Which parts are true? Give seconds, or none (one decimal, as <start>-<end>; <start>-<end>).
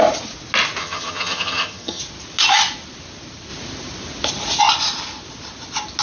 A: 0.0-0.8; 2.0-6.0